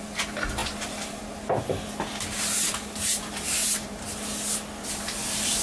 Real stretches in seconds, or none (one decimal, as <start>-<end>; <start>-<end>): 0.0-5.6